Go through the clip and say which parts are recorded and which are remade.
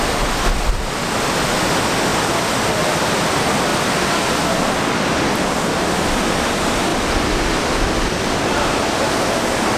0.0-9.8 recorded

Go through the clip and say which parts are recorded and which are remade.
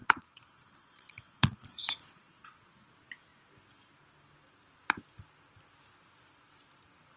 0.0-2.9 remade; 2.9-7.2 recorded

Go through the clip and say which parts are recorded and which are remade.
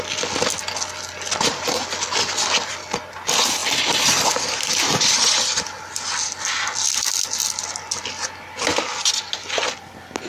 0.0-10.3 recorded